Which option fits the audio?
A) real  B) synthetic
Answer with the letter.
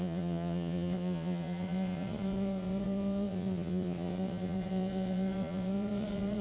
B